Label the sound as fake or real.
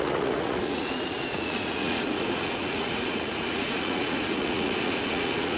fake